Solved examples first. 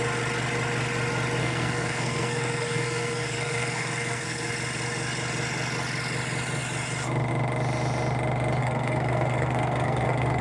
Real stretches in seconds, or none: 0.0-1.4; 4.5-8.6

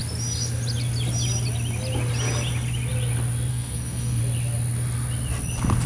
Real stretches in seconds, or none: 0.0-3.5; 4.2-5.9